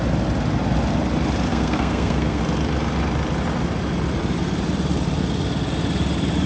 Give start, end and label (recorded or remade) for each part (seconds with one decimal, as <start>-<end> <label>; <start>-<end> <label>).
0.0-1.5 recorded; 1.5-2.4 remade; 2.4-6.5 recorded